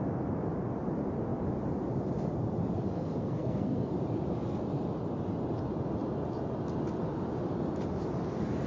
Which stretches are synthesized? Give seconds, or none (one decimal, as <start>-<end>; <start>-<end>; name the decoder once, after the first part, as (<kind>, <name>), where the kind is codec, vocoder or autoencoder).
3.0-3.9 (codec, SNAC)